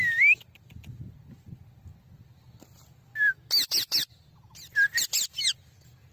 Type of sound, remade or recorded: recorded